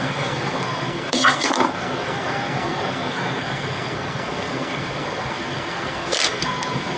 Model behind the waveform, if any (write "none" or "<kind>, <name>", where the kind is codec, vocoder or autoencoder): codec, SNAC